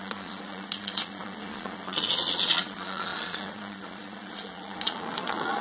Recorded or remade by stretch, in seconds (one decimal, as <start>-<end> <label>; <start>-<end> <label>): 0.0-5.6 remade